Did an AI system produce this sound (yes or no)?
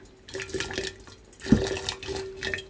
no